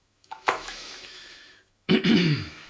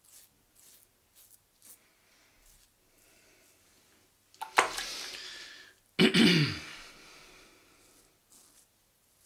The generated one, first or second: first